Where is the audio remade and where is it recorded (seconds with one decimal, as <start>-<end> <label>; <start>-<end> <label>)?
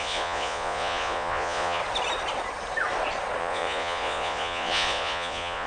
0.0-1.8 remade; 1.8-3.4 recorded; 3.4-5.7 remade